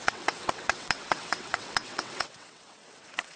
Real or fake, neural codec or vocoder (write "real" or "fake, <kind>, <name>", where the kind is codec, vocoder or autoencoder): fake, vocoder, WaveNeXt